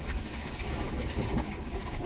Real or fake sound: fake